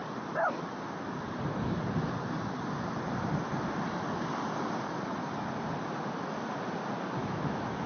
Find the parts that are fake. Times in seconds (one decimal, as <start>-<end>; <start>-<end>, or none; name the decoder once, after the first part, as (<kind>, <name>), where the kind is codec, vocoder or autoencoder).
7.2-7.9 (autoencoder, DAC-VAE)